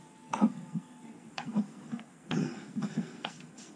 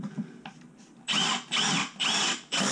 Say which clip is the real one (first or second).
second